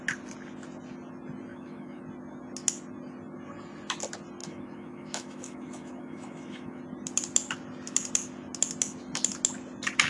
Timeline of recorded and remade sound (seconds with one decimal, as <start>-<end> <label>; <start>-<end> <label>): 0.0-1.5 recorded; 1.5-2.0 remade; 2.0-4.4 recorded; 4.4-6.8 remade; 6.8-10.1 recorded